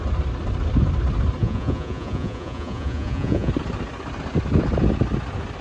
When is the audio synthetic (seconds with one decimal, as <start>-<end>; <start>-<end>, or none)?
1.4-3.5